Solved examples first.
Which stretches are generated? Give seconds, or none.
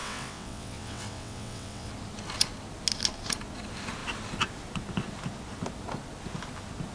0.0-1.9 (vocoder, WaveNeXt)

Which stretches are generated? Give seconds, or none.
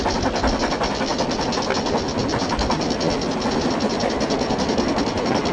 none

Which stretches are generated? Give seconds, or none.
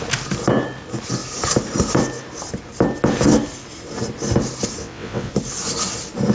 4.8-5.3 (vocoder, WaveNeXt)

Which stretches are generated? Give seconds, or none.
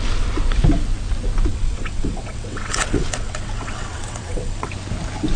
1.5-4.7 (vocoder, WaveNeXt)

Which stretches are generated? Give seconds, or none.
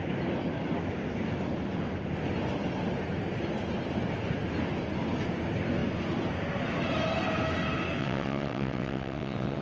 8.0-9.6 (vocoder, WaveNeXt)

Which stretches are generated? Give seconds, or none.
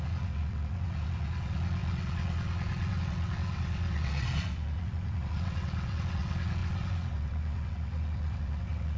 0.0-9.0 (vocoder, WaveNeXt)